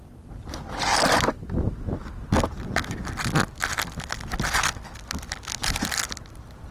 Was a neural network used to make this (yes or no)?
no